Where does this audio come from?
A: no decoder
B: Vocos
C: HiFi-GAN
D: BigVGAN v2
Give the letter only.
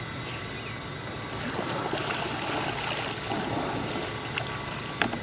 A